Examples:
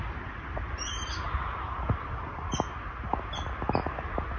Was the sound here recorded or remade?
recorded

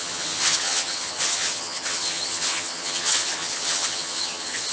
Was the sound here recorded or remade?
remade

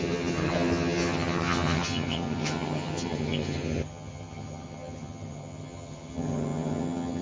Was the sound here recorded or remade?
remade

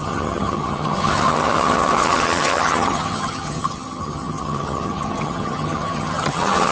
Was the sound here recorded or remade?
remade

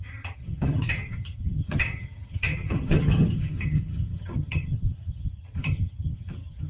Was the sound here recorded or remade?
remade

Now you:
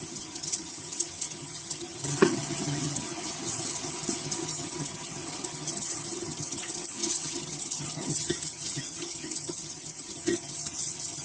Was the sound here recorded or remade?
remade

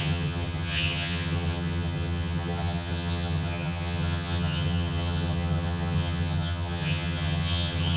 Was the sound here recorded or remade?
remade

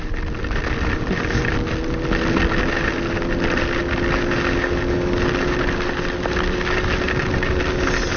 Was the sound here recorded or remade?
recorded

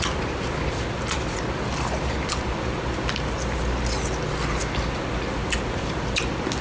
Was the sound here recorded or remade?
recorded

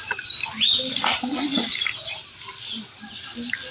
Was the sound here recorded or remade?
recorded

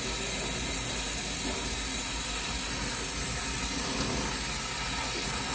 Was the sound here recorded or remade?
recorded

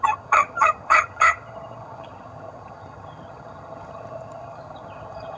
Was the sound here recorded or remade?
remade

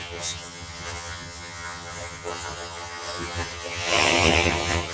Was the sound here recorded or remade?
remade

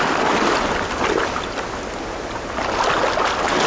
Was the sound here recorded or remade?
recorded